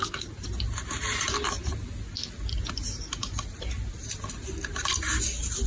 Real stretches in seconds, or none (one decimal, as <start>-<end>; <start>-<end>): 0.0-5.7